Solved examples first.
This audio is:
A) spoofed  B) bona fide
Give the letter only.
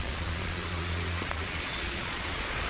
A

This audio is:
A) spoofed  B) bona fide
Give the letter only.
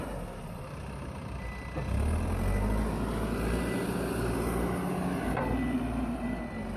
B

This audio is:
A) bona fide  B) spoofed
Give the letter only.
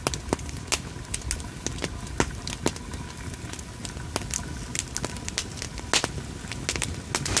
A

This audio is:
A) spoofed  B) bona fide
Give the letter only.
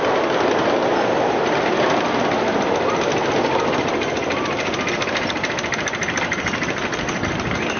B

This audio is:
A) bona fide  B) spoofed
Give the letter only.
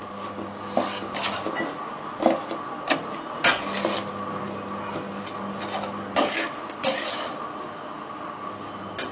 A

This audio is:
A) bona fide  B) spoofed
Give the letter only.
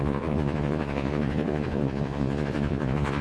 B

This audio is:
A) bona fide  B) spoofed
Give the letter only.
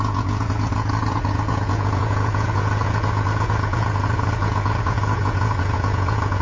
B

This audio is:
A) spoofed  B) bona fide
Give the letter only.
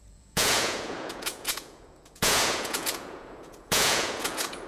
A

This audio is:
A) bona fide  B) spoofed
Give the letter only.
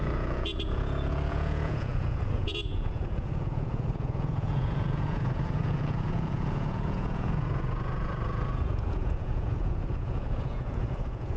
B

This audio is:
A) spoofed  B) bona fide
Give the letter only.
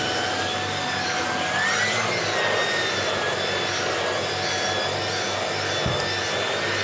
B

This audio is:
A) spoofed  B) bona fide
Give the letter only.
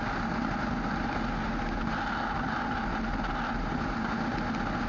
B